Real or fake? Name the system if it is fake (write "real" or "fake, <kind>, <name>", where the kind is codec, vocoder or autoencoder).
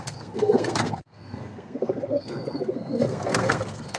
fake, codec, SNAC